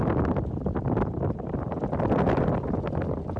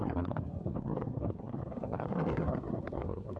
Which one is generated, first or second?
second